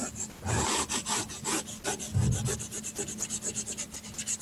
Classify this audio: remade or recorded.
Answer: recorded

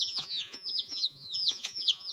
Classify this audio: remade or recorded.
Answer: remade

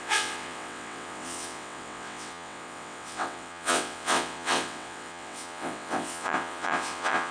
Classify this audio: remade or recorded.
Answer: remade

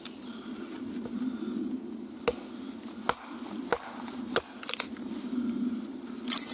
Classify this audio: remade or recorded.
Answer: recorded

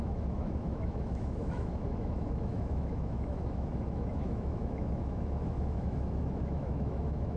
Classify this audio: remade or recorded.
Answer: remade